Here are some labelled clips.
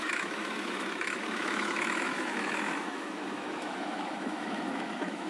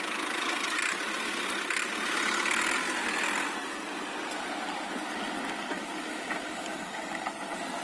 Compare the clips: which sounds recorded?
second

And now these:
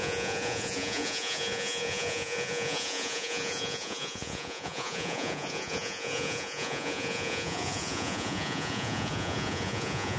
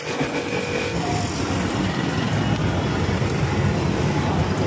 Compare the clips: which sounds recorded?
second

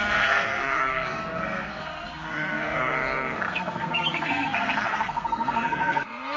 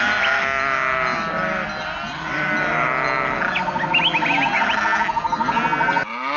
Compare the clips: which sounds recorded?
second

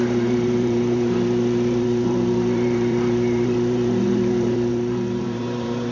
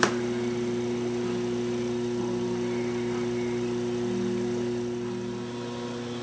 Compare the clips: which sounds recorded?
second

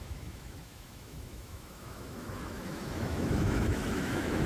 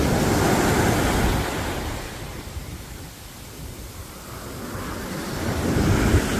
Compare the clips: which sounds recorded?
second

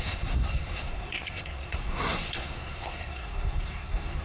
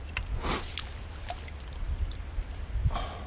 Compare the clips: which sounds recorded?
second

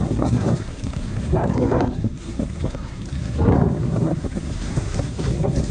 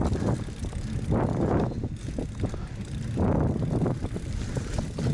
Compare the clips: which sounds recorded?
second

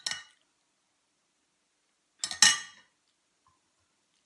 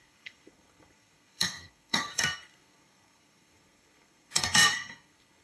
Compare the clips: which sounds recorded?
first